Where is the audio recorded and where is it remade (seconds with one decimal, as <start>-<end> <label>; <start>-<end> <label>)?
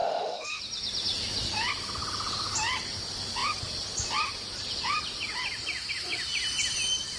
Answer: 0.0-0.6 remade; 0.6-7.2 recorded